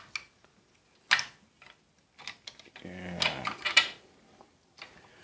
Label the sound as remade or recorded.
recorded